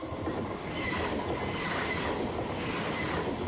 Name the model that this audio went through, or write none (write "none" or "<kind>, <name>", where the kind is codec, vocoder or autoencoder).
none